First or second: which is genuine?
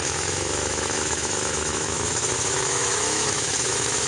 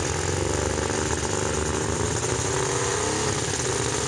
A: second